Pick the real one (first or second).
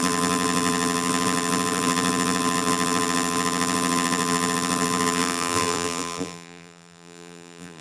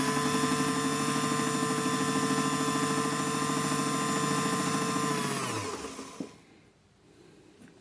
second